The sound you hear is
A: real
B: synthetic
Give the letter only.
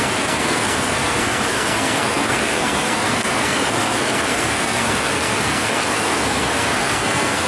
B